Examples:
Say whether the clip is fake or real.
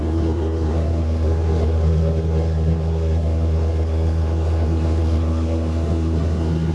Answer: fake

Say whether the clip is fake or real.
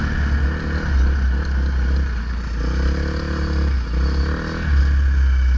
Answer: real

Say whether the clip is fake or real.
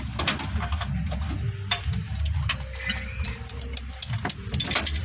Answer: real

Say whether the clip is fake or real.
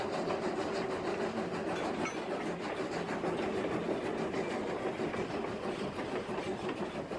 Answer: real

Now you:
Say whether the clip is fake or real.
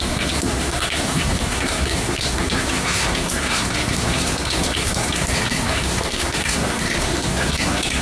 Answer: fake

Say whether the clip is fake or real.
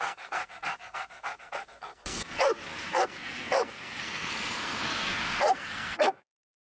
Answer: fake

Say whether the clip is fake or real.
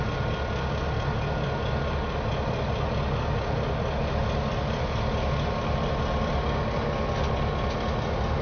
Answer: real